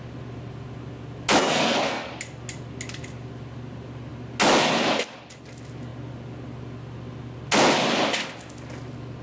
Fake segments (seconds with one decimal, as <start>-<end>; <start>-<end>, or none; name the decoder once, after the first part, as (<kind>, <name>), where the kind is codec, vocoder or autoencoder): 1.4-2.1 (codec, SNAC)